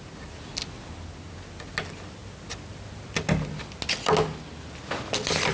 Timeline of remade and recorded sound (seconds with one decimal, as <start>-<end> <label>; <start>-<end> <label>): 0.0-5.5 recorded